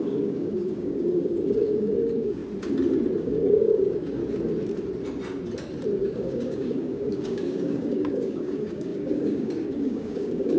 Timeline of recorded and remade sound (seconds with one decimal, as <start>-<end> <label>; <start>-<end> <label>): 0.0-2.4 remade; 2.4-3.2 recorded; 3.2-4.2 remade; 4.2-6.0 recorded; 6.0-10.6 remade